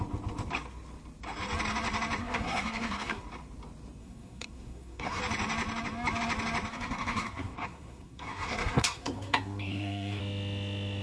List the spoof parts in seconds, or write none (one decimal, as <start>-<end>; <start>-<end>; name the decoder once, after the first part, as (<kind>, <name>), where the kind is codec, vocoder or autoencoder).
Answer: 2.2-3.2 (codec, SNAC); 4.0-5.2; 6.7-10.2